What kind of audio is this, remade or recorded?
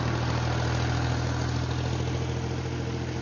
recorded